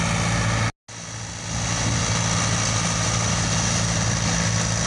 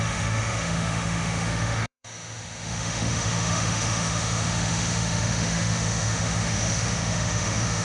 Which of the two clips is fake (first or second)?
second